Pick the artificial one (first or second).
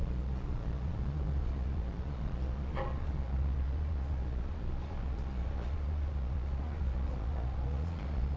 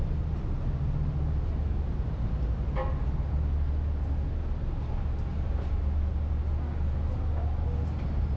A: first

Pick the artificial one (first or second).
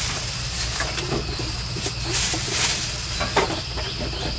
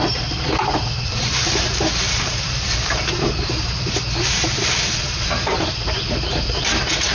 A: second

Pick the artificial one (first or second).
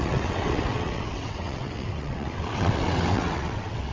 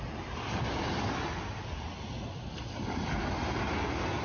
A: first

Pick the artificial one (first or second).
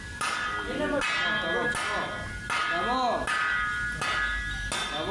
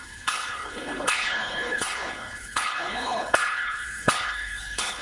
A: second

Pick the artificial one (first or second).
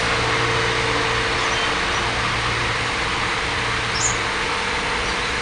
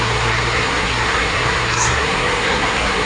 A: second